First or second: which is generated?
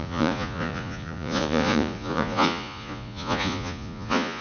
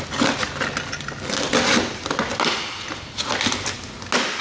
first